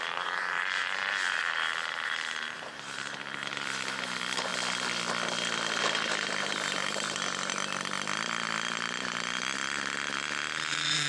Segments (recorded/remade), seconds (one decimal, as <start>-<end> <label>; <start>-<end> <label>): 0.0-4.5 remade; 4.5-5.8 recorded; 5.8-7.5 remade; 7.5-10.6 recorded; 10.6-11.1 remade